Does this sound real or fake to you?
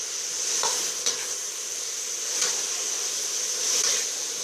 real